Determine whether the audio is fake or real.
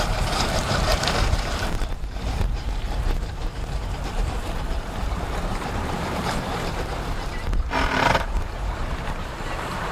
fake